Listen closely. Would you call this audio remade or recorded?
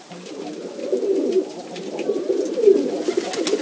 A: recorded